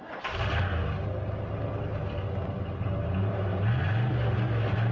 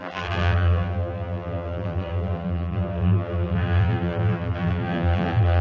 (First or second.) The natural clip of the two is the first